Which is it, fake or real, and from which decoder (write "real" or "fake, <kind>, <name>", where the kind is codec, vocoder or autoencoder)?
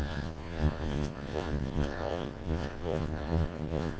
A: fake, vocoder, Vocos